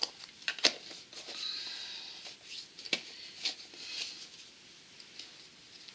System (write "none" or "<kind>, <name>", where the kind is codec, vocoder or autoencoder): none